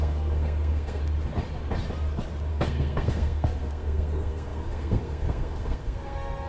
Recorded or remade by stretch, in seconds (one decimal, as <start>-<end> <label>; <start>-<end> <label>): 0.0-1.0 remade; 1.0-2.5 recorded; 2.5-6.5 remade